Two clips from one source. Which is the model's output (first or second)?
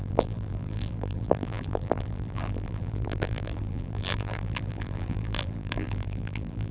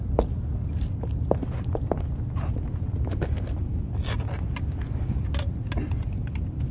first